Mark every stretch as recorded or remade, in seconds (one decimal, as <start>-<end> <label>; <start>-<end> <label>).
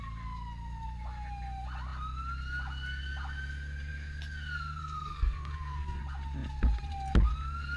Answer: 0.0-4.8 recorded; 4.8-6.0 remade; 6.0-7.8 recorded